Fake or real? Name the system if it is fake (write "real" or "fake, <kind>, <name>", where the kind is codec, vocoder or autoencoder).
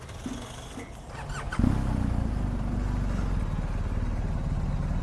real